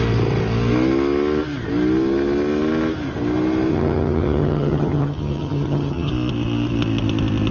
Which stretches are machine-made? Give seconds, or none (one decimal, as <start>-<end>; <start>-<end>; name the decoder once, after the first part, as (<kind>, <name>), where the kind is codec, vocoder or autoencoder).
3.7-6.1 (vocoder, HiFi-GAN)